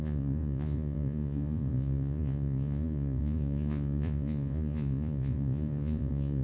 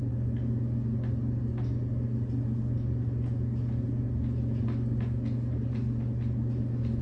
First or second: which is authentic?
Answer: second